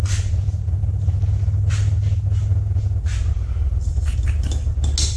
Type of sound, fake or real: real